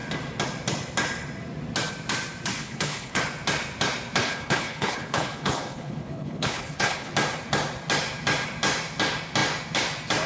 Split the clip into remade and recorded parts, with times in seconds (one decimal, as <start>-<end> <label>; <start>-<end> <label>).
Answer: 0.0-2.6 recorded; 2.6-3.2 remade; 3.2-4.2 recorded; 4.2-7.1 remade; 7.1-10.3 recorded